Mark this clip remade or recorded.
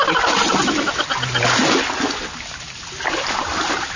recorded